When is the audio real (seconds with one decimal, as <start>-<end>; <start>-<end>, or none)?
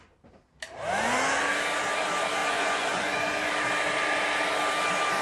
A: 0.0-2.4; 3.5-5.2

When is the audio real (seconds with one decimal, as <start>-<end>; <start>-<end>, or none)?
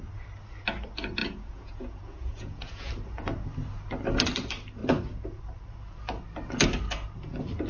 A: 0.0-1.2; 2.9-7.7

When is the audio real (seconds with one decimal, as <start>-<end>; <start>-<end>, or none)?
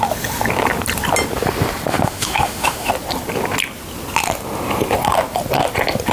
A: 0.0-1.9; 2.9-6.1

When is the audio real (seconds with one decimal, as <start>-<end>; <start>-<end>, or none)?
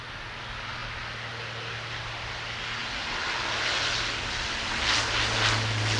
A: 0.0-6.0